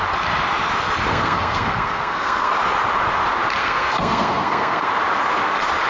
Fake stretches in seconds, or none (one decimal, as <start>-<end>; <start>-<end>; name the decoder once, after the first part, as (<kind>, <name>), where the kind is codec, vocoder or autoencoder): 1.1-2.5 (codec, SNAC); 3.6-4.9